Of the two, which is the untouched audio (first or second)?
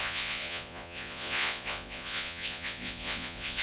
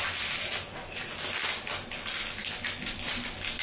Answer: second